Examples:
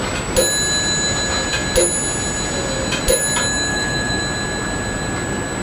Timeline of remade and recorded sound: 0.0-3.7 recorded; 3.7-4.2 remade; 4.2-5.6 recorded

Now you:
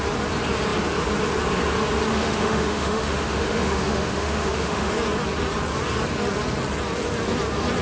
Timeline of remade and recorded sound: 0.0-2.1 recorded; 2.1-4.9 remade; 4.9-7.8 recorded

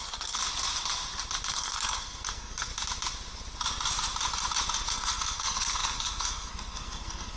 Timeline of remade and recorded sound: 0.0-0.4 remade; 0.4-1.5 recorded; 1.5-2.7 remade; 2.7-4.9 recorded; 4.9-7.4 remade

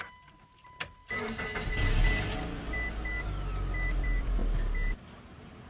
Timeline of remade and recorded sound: 0.0-1.0 remade; 1.0-4.0 recorded; 4.0-4.4 remade; 4.4-5.7 recorded

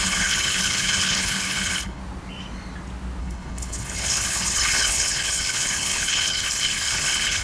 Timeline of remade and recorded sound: 0.0-2.0 remade; 2.0-3.2 recorded; 3.2-7.4 remade